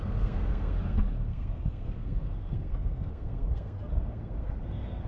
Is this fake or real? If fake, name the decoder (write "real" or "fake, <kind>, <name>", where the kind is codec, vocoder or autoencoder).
fake, codec, SNAC